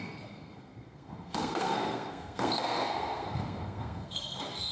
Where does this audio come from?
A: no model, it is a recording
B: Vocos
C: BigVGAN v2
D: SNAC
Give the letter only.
D